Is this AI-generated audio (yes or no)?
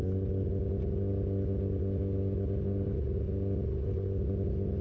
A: no